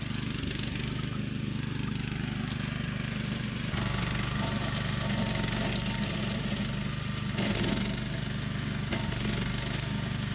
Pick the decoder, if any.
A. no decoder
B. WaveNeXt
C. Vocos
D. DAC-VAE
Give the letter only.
A